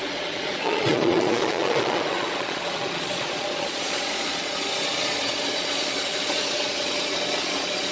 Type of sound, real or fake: fake